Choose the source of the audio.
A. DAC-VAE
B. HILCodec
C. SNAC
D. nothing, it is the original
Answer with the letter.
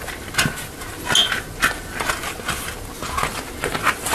D